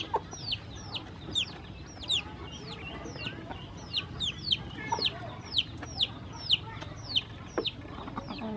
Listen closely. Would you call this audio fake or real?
real